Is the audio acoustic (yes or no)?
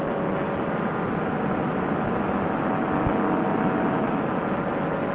yes